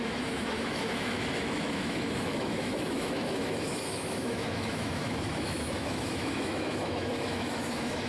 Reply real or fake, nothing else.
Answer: fake